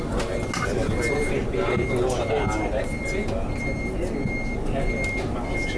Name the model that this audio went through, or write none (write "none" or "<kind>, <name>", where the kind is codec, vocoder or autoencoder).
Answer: none